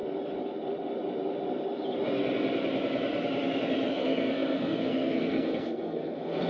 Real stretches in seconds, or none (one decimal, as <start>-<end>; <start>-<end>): 0.0-3.9